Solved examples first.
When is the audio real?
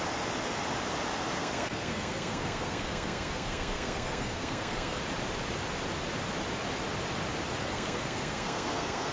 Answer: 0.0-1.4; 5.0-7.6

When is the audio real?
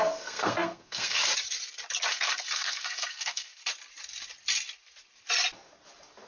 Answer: 1.2-2.1; 3.6-6.3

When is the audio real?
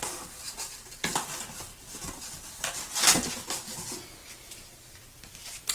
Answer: 0.0-4.2; 5.0-5.7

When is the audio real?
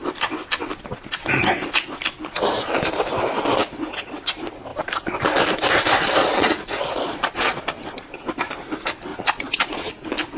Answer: 0.0-6.2; 7.6-9.1; 9.9-10.4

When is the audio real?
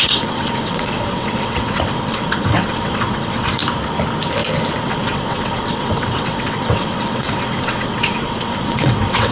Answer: 3.6-4.8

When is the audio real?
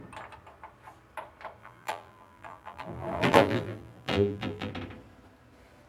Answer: 0.0-1.6; 4.7-5.9